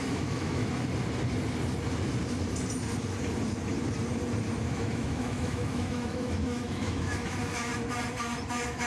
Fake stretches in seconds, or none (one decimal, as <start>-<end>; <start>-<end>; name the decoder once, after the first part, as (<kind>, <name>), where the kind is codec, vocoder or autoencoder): 0.0-0.6 (autoencoder, DAC-VAE); 4.6-7.7; 8.5-8.9